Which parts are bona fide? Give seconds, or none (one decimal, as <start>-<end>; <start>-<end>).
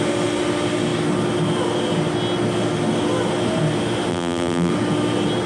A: 0.0-4.1; 4.7-5.5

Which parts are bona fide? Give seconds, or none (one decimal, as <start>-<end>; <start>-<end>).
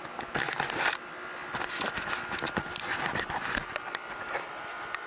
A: 0.0-5.1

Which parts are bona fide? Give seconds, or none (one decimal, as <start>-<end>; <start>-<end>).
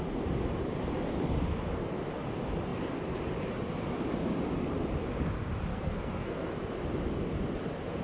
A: 0.0-5.7; 6.5-8.0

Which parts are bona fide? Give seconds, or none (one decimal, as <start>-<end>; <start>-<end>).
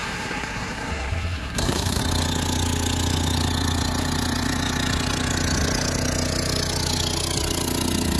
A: 2.0-8.2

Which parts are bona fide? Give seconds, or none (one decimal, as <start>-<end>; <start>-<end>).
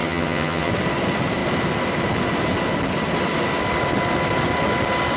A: 0.7-5.2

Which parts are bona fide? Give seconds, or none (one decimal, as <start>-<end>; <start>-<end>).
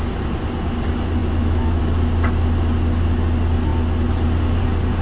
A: 0.0-1.2; 1.8-5.0